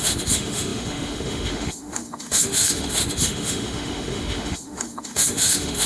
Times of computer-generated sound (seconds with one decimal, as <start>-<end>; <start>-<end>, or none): 0.0-5.9